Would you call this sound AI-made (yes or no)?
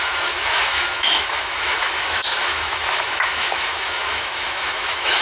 yes